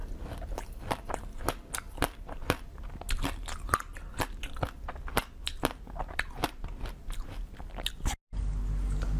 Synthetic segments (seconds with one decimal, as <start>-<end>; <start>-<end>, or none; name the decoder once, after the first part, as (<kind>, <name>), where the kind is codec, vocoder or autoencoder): none